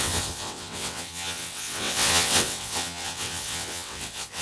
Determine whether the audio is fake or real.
fake